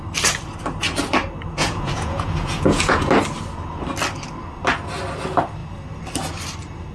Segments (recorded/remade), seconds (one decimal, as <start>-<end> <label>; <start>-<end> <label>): 0.0-1.6 recorded; 1.6-3.1 remade; 3.1-6.9 recorded